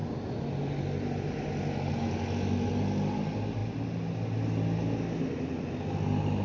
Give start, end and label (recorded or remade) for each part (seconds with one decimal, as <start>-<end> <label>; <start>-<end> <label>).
0.0-6.4 recorded